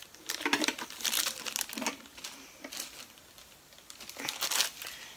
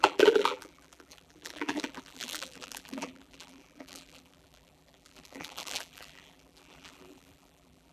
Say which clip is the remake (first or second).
second